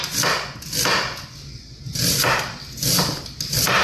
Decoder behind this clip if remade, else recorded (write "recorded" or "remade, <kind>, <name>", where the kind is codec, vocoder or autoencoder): recorded